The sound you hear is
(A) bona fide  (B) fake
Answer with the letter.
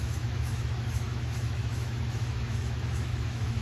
B